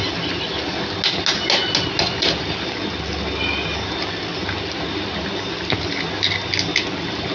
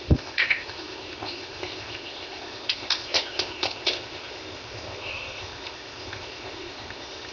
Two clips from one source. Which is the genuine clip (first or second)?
first